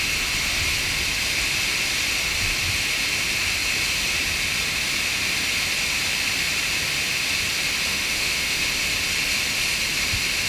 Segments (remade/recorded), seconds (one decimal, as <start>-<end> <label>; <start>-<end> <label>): 0.0-7.9 recorded; 7.9-8.6 remade; 8.6-10.5 recorded